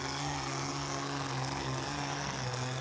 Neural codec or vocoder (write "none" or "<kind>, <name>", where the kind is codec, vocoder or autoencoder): codec, SNAC